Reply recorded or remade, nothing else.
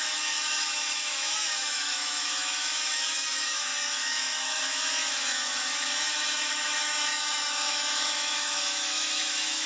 remade